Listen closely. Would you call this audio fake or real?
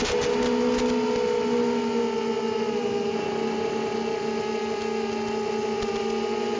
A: real